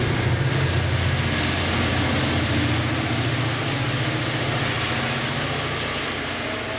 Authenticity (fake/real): real